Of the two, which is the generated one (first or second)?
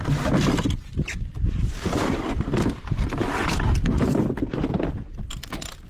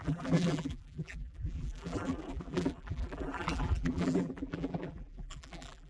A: second